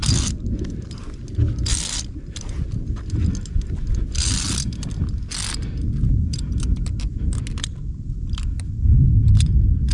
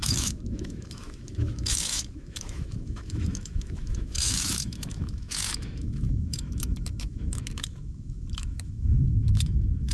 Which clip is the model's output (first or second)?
second